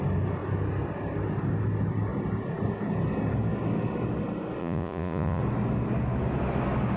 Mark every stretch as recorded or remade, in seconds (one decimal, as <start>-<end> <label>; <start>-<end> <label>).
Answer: 0.0-4.6 recorded; 4.6-5.4 remade; 5.4-7.0 recorded